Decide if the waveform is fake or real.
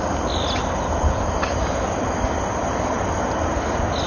real